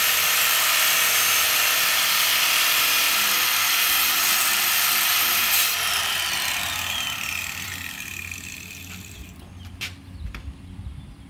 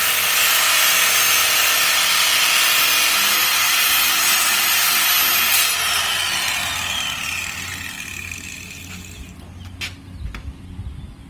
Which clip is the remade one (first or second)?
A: first